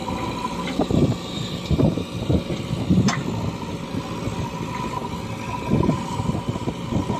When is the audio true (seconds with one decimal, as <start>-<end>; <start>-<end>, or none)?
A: 0.0-7.2